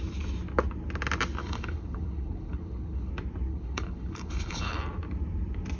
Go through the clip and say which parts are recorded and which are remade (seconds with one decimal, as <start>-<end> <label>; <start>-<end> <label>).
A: 0.0-1.4 recorded; 1.4-3.1 remade; 3.1-3.5 recorded; 3.5-4.8 remade; 4.8-5.8 recorded